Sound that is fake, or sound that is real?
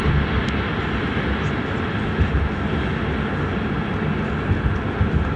real